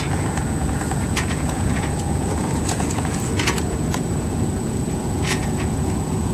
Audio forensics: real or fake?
fake